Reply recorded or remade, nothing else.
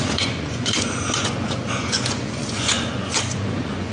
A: remade